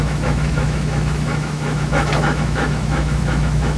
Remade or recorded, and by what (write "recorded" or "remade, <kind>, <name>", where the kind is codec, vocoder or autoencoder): remade, autoencoder, DAC-VAE